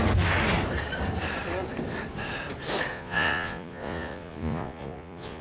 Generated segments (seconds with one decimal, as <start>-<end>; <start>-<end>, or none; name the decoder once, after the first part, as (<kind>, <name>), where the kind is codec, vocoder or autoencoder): 2.9-5.4 (vocoder, Vocos)